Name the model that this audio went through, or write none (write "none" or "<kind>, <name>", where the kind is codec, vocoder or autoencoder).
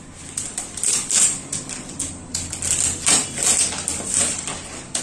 none